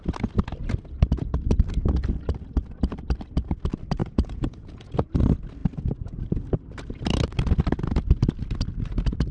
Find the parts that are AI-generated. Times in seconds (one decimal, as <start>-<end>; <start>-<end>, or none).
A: 4.0-4.9